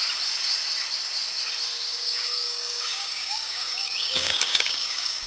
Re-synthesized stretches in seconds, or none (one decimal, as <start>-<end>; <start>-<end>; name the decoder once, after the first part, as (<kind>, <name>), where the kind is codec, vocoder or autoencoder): 1.9-5.3 (codec, DAC)